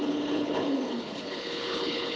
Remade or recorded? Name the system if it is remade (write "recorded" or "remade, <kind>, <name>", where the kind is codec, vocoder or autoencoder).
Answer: remade, codec, HILCodec